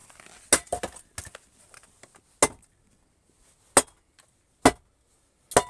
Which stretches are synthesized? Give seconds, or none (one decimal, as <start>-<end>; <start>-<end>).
none